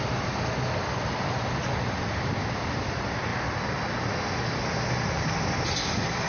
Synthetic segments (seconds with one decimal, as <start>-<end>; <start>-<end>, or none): none